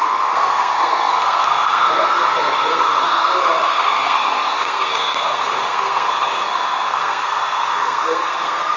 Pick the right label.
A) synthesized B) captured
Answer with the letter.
A